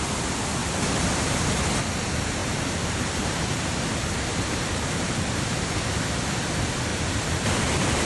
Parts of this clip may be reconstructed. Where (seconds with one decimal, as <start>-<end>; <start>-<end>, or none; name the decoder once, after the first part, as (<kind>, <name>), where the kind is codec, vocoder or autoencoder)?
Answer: 0.6-1.6 (vocoder, BigVGAN v2); 2.4-5.7; 6.9-8.1